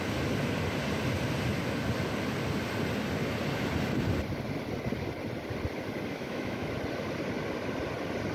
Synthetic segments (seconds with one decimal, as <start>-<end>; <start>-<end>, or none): 6.1-6.7